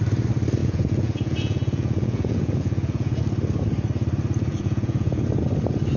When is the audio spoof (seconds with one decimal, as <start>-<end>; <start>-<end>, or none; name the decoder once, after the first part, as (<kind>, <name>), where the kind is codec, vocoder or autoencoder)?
0.6-3.2 (vocoder, Vocos); 4.5-5.2